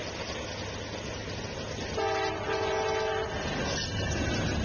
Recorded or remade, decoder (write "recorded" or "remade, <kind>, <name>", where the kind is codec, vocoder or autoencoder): recorded